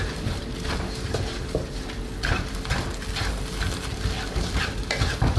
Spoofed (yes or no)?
no